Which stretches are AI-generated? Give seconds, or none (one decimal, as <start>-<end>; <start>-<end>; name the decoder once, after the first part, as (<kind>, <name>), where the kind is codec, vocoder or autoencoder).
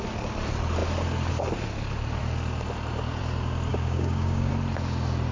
3.7-4.5 (codec, DAC)